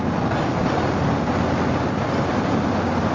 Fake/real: real